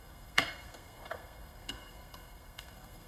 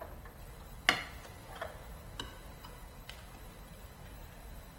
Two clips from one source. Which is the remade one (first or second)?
first